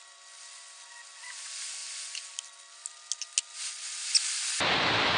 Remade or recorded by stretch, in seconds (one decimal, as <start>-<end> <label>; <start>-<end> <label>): 0.0-5.2 recorded